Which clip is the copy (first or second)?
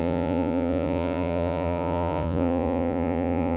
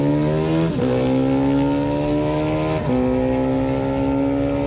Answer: first